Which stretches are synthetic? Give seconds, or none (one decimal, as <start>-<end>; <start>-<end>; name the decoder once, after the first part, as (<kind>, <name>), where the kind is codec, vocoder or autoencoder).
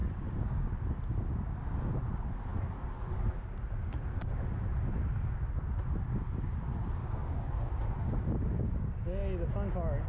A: 0.0-0.7 (codec, DAC); 7.0-8.1